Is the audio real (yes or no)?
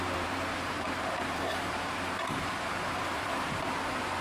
no